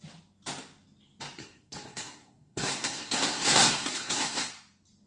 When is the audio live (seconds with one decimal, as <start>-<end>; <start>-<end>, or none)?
0.0-1.4; 4.5-5.1